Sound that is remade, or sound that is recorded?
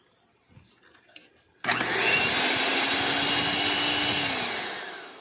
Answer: recorded